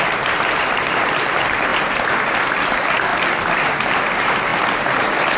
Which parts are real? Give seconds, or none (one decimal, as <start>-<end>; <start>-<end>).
0.0-5.4